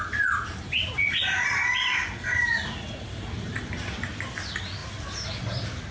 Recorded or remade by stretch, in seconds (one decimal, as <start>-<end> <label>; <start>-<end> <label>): 0.0-5.9 recorded